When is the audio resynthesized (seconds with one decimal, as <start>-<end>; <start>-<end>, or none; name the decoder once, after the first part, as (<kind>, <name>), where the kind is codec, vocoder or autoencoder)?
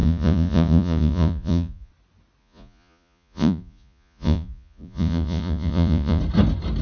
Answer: 0.0-1.9 (vocoder, Vocos); 2.4-6.2